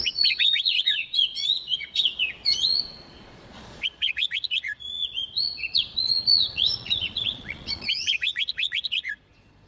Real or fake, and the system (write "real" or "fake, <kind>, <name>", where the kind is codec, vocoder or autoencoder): fake, vocoder, Vocos